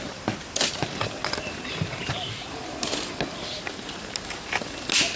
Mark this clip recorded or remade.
recorded